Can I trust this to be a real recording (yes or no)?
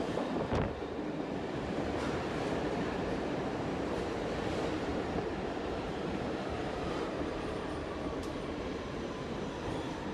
no